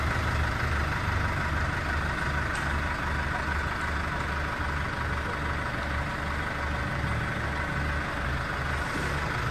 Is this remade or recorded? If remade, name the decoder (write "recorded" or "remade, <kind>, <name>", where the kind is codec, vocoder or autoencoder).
recorded